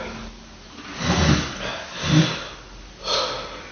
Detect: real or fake real